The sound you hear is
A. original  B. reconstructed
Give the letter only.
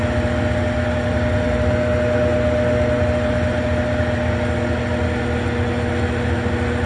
A